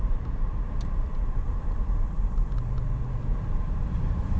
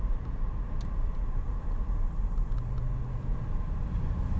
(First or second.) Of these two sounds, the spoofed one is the first